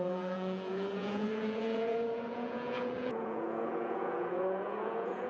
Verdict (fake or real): fake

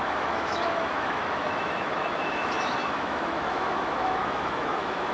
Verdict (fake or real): fake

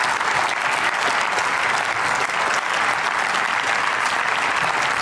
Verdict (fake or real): fake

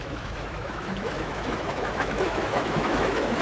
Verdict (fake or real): fake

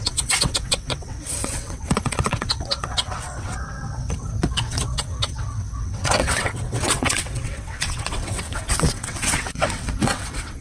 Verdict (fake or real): fake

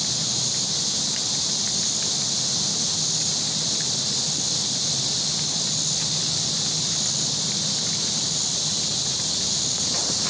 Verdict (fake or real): real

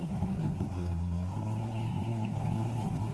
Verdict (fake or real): fake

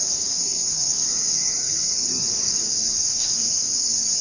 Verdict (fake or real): fake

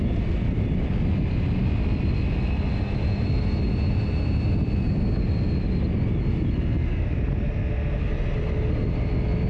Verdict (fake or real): real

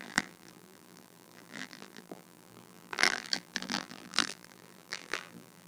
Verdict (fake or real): fake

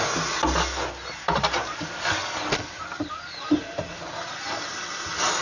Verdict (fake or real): real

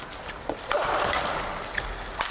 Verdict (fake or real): real